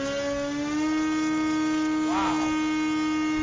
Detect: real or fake real